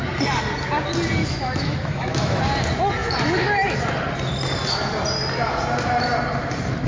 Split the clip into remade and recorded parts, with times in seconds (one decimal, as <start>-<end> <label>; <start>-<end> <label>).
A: 0.0-1.2 recorded; 1.2-2.4 remade; 2.4-3.0 recorded; 3.0-3.8 remade; 3.8-6.9 recorded